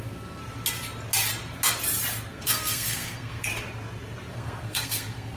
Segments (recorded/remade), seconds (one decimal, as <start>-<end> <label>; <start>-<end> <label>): 0.0-0.4 remade; 0.4-2.3 recorded; 2.3-3.5 remade; 3.5-4.3 recorded; 4.3-5.4 remade